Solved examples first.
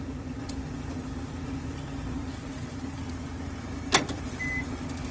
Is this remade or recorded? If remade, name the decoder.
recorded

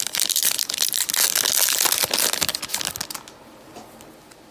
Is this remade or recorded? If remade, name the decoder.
recorded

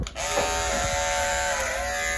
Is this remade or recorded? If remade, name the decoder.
recorded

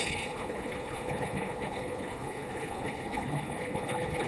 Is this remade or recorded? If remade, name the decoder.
remade, codec, HILCodec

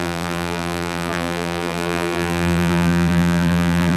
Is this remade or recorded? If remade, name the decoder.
remade, vocoder, BigVGAN v2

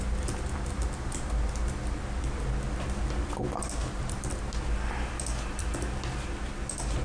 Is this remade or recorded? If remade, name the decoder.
recorded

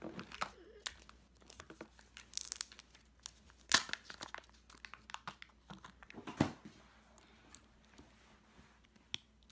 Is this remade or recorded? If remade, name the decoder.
recorded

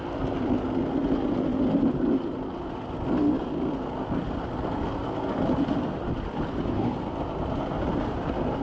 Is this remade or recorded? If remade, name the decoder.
recorded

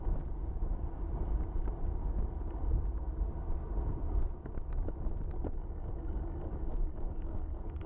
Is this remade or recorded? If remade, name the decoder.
recorded